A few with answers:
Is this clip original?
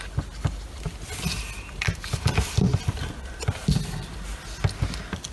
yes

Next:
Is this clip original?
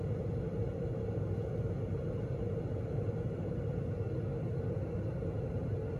yes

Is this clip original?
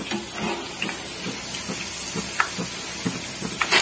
yes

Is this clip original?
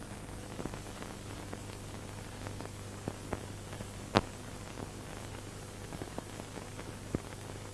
no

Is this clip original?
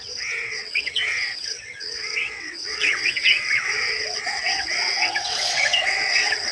no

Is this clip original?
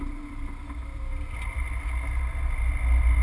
yes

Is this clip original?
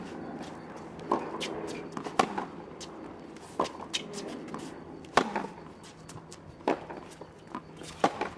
yes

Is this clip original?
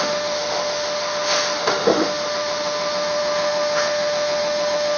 no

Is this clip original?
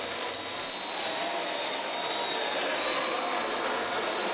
yes